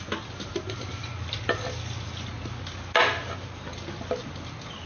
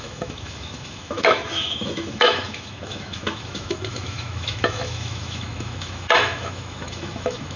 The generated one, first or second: second